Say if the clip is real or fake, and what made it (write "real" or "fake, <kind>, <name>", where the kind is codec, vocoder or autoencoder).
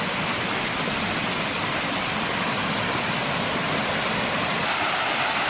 fake, vocoder, BigVGAN v2